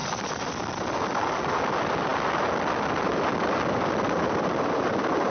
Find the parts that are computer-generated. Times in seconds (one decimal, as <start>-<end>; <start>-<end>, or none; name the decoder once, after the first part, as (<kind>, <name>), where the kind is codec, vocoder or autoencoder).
none